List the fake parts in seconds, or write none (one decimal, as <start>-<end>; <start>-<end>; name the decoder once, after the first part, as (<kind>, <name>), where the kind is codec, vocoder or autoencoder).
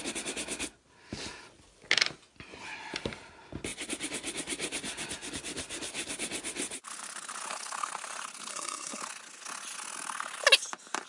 8.5-9.0 (codec, SNAC)